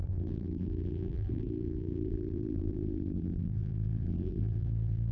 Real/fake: fake